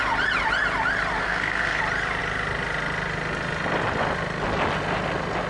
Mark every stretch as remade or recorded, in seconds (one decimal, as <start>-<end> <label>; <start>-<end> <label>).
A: 0.0-1.2 recorded; 1.2-1.8 remade; 1.8-5.5 recorded

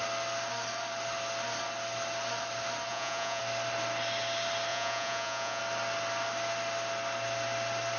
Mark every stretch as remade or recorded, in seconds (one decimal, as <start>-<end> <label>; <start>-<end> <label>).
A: 0.0-2.9 recorded; 2.9-3.4 remade; 3.4-4.7 recorded; 4.7-5.6 remade; 5.6-8.0 recorded

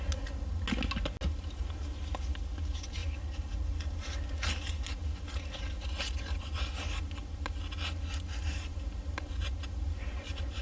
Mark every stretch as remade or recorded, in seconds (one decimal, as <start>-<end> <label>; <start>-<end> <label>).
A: 0.0-10.6 recorded

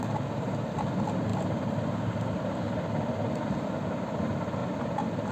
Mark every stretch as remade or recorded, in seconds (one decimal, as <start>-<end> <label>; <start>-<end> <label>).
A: 0.0-1.3 recorded; 1.3-3.1 remade; 3.1-5.3 recorded